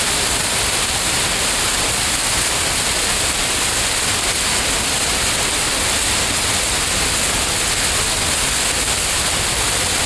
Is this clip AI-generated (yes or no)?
no